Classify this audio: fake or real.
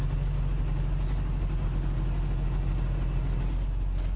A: real